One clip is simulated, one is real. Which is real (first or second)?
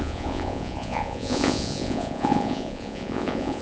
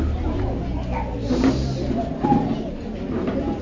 second